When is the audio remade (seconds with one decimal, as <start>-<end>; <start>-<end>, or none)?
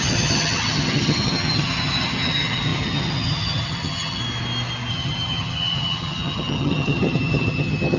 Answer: 0.0-4.2; 4.9-8.0